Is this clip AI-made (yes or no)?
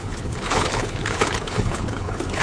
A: yes